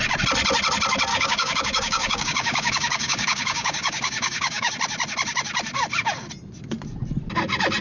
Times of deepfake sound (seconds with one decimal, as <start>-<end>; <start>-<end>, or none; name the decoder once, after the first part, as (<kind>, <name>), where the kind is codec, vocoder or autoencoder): 1.1-4.7 (codec, DAC)